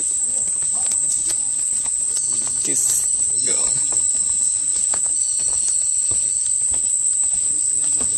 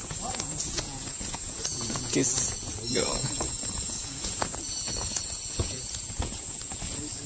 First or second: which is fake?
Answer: second